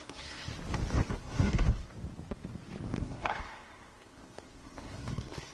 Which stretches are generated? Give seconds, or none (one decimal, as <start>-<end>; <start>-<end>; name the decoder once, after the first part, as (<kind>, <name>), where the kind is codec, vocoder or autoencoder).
0.0-0.5 (codec, SNAC); 1.1-1.9; 3.0-5.5